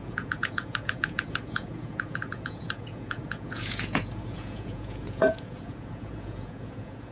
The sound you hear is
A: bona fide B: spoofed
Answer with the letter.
B